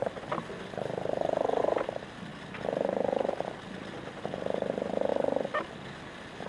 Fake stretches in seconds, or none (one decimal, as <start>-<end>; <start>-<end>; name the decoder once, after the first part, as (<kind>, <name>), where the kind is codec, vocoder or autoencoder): none